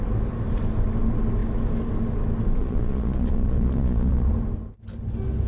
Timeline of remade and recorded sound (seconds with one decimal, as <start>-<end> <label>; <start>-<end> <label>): 0.0-2.6 recorded; 2.6-4.3 remade; 4.3-5.5 recorded